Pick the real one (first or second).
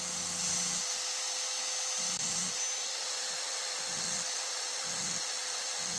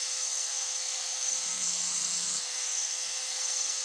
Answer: first